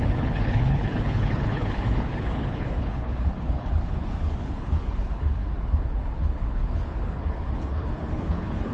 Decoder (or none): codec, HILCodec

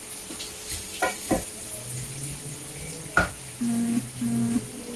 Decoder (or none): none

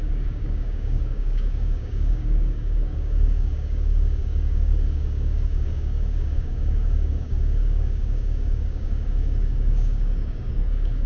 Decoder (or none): codec, DAC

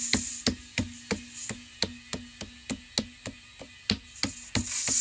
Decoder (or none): none